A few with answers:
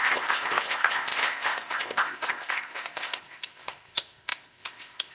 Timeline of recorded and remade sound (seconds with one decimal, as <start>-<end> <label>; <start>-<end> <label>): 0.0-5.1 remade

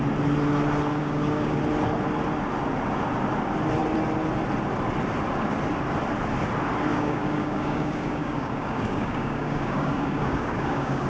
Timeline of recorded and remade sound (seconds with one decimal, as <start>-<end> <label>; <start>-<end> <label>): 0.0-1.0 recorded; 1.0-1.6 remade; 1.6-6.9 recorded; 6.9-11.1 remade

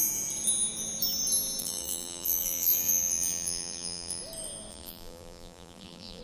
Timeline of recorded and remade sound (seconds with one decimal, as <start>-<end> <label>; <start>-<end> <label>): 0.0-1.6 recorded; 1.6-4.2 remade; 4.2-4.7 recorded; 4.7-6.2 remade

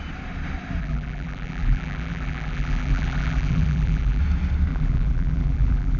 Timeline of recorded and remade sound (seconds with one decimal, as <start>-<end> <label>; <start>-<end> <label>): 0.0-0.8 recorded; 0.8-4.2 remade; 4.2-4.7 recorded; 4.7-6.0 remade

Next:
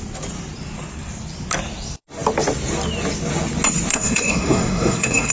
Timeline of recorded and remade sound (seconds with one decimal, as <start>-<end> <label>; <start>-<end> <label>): 0.0-3.9 recorded; 3.9-5.3 remade

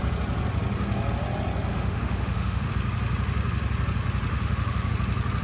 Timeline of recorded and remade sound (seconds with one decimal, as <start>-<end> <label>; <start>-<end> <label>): 0.0-1.7 recorded; 1.7-2.7 remade; 2.7-4.3 recorded; 4.3-4.9 remade; 4.9-5.4 recorded

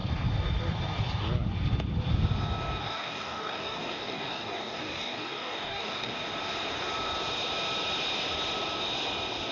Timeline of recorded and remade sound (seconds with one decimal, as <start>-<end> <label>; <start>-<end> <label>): 0.0-2.8 recorded; 2.8-6.1 remade; 6.1-9.5 recorded